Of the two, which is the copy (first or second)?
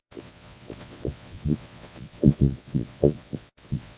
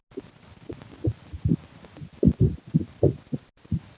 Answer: first